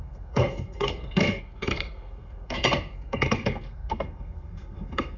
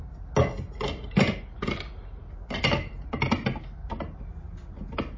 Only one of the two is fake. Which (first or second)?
first